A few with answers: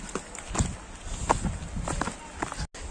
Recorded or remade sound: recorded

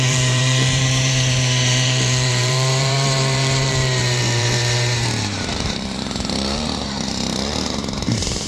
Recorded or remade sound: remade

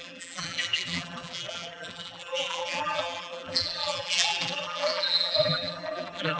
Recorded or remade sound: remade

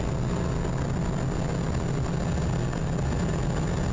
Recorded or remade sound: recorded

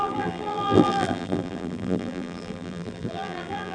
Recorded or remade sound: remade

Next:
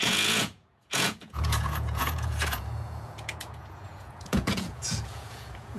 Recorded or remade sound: remade